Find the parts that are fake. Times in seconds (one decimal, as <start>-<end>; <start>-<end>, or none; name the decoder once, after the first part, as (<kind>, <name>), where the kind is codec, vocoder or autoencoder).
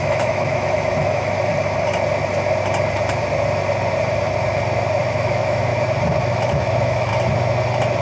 0.0-1.5 (autoencoder, DAC-VAE); 5.0-5.7; 6.2-7.1